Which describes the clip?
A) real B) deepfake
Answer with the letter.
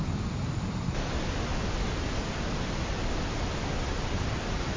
A